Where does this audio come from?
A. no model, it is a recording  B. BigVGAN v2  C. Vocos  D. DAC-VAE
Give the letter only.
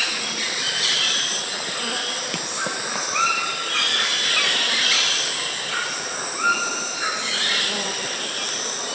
A